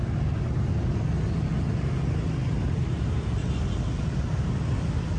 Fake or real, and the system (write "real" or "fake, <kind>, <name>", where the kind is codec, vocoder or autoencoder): real